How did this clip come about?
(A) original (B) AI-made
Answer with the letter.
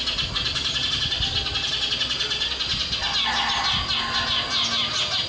A